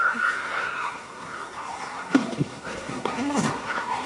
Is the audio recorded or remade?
remade